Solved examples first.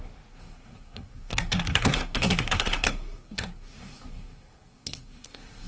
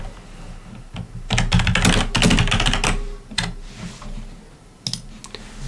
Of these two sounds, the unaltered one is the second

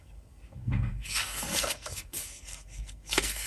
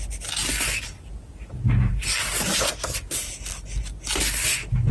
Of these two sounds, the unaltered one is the second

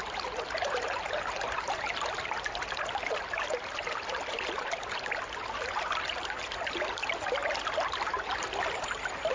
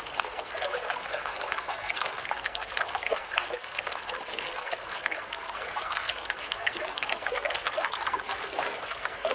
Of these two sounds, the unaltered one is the first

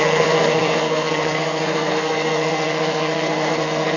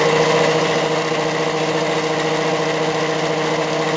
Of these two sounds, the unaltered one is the second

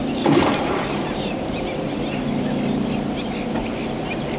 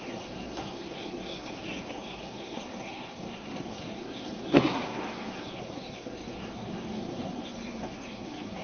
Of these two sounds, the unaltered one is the first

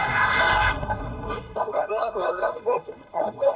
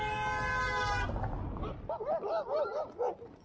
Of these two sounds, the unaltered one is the second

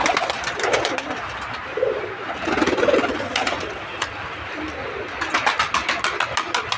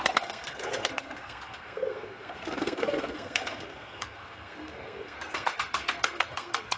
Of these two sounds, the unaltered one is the first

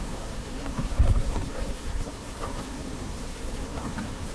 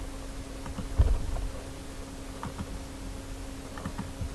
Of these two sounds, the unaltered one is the second